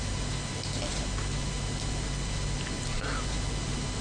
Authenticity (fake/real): real